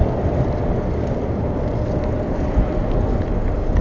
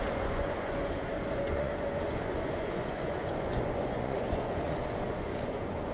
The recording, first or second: first